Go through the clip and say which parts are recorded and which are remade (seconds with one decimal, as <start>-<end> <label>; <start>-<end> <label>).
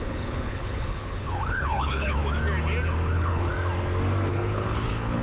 0.0-2.2 remade; 2.2-3.1 recorded; 3.1-3.5 remade; 3.5-4.3 recorded; 4.3-5.2 remade